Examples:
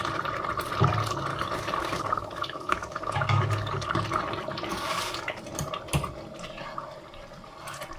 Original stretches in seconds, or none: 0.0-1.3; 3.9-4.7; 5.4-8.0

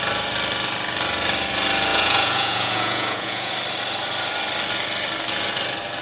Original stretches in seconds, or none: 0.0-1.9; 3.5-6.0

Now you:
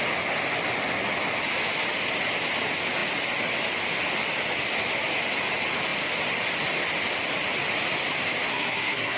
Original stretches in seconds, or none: 0.0-8.5

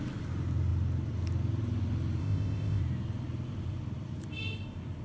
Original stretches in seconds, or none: 0.0-2.2; 2.8-5.0